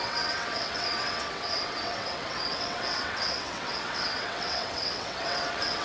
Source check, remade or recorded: remade